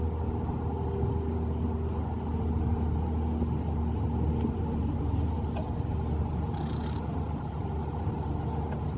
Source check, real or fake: real